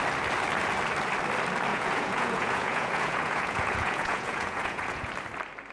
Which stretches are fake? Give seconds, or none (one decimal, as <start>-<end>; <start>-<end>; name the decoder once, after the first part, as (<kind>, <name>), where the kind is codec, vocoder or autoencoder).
1.7-5.1 (vocoder, Vocos)